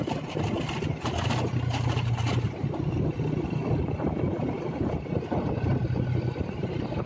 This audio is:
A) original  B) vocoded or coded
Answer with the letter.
A